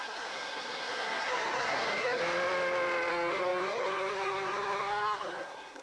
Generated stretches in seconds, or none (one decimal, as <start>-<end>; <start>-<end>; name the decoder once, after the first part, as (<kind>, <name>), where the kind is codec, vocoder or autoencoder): 0.0-2.2 (codec, SNAC); 3.1-5.8